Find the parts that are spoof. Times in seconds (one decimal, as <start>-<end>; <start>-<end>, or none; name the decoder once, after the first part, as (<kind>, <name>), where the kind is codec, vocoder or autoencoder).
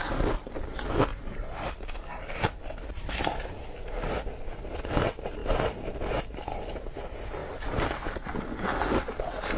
none